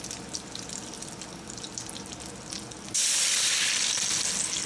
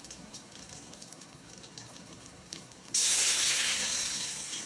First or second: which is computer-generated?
second